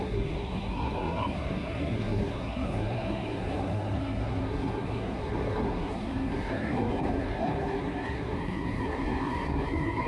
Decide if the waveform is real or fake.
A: fake